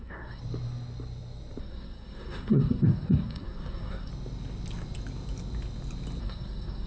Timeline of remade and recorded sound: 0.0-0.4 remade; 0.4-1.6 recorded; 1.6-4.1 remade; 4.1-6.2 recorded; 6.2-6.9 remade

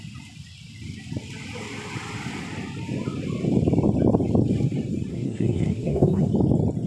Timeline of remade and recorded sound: 0.0-5.1 recorded; 5.1-6.3 remade; 6.3-6.9 recorded